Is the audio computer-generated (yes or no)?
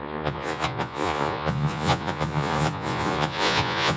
yes